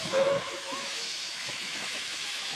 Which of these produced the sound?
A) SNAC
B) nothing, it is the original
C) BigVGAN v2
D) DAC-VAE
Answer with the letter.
D